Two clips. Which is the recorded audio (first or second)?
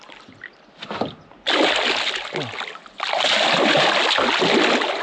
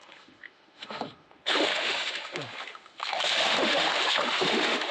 first